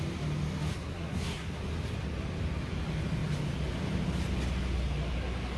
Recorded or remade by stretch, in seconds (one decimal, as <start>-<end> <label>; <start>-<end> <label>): 0.0-0.7 recorded; 0.7-1.6 remade; 1.6-5.6 recorded